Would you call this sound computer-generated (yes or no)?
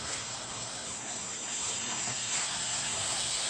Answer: yes